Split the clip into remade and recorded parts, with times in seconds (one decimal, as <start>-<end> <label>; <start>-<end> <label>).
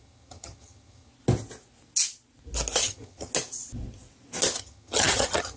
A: 0.0-1.1 remade; 1.1-2.8 recorded; 2.8-3.3 remade; 3.3-4.6 recorded; 4.6-5.6 remade